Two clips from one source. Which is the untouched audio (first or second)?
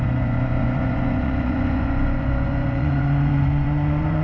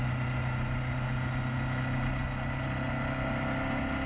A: second